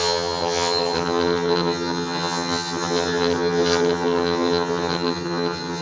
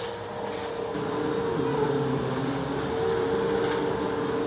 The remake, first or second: first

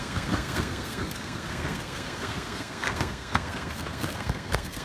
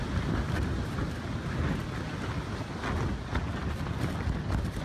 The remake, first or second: first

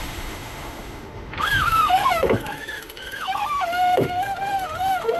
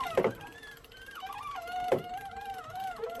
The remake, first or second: first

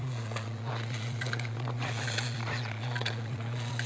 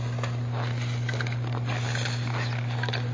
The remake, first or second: first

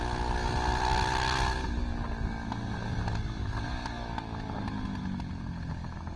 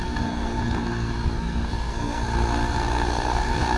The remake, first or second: second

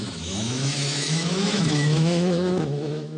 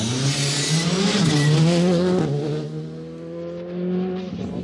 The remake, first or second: first